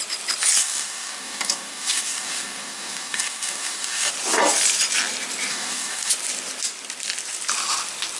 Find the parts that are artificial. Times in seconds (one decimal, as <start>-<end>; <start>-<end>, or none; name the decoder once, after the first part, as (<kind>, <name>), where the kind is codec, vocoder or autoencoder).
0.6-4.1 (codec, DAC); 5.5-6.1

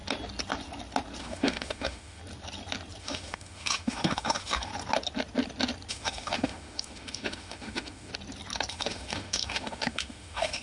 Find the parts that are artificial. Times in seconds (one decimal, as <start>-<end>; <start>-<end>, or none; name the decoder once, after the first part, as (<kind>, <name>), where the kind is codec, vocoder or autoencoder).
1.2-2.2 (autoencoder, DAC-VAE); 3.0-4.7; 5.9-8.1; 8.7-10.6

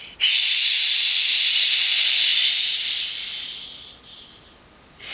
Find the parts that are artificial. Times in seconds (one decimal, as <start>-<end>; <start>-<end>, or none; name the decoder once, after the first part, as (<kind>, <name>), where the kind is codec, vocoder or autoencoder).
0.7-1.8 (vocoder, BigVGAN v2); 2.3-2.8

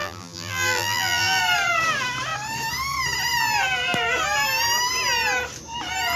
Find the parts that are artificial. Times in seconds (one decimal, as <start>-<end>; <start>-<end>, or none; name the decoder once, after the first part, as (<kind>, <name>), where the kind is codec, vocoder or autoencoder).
0.0-1.4 (vocoder, BigVGAN v2)

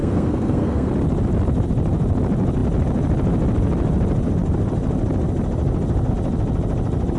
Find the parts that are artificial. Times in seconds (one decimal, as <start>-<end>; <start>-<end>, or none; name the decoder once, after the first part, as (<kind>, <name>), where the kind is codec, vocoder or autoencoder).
0.0-0.9 (codec, SNAC)

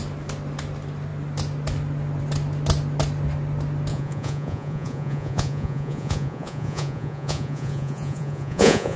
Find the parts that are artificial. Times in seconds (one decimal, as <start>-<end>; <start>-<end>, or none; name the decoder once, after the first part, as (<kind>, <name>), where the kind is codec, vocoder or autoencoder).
3.9-9.0 (vocoder, Vocos)

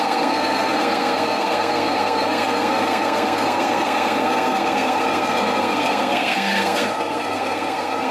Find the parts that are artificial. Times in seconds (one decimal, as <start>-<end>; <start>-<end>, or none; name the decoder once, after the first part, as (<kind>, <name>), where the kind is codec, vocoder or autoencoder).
0.0-8.1 (codec, SNAC)